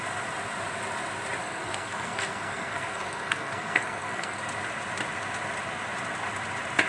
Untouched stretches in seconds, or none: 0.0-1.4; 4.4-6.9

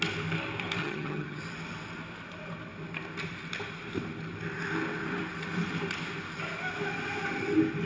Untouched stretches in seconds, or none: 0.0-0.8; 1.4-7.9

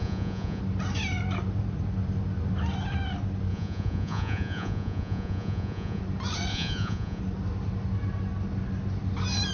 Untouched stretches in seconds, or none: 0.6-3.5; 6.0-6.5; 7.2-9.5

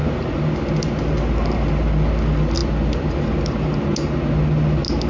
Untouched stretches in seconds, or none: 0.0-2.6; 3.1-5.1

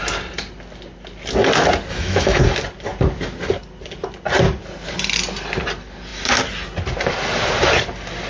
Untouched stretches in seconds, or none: 0.0-1.9; 2.4-8.3

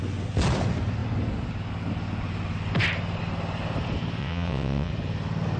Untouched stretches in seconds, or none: 0.0-4.2; 4.9-5.6